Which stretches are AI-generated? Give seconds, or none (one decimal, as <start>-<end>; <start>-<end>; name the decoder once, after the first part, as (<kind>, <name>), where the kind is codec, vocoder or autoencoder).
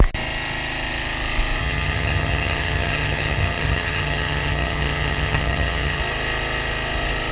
1.6-6.0 (vocoder, HiFi-GAN)